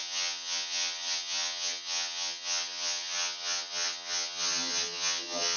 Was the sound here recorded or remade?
remade